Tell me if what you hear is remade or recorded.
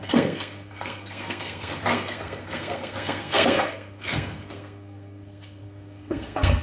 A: remade